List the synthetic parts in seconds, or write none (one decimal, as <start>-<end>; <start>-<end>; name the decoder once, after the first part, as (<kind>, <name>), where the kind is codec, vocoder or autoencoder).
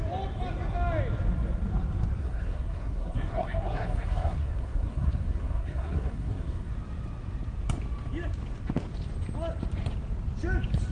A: 2.2-6.7 (codec, SNAC)